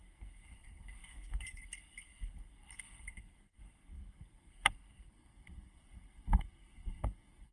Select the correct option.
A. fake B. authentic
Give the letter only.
A